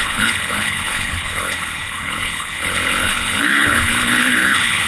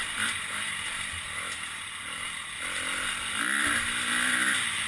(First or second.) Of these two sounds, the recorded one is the second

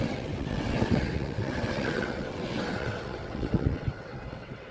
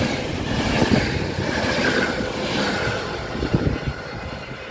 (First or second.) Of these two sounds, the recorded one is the second